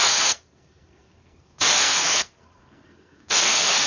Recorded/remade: remade